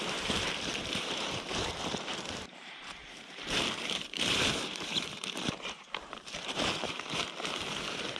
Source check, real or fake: fake